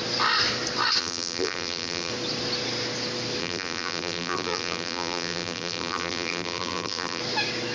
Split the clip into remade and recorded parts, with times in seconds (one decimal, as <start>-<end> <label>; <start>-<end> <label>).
0.0-1.0 recorded; 1.0-2.1 remade; 2.1-3.4 recorded; 3.4-7.2 remade; 7.2-7.7 recorded